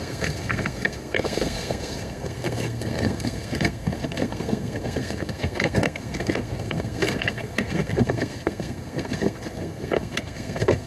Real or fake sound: fake